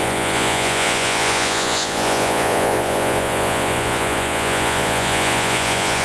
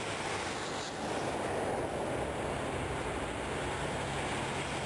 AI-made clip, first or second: first